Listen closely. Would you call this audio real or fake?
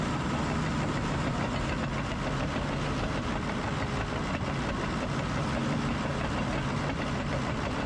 real